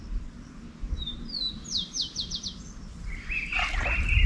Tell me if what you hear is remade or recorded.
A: recorded